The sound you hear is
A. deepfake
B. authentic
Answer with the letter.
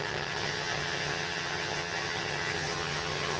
A